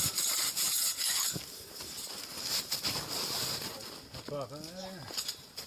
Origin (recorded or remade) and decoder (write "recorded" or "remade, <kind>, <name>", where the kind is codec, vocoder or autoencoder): recorded